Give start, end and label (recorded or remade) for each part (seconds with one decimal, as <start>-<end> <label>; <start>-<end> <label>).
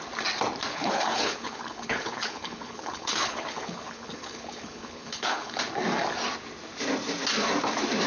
0.0-0.7 recorded; 0.7-5.6 remade; 5.6-8.1 recorded